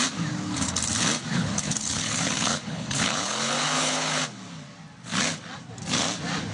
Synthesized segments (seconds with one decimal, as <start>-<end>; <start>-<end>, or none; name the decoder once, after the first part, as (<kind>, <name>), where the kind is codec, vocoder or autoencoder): 1.3-4.2 (codec, HILCodec)